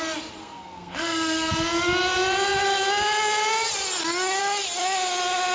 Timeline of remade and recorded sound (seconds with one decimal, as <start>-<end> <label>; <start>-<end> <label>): 0.0-0.4 recorded; 0.4-1.5 remade; 1.5-5.5 recorded